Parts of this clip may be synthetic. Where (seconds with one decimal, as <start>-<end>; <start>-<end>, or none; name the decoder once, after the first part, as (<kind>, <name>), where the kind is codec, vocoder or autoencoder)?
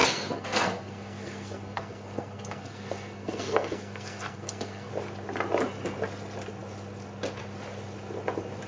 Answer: 0.0-4.9 (codec, SNAC)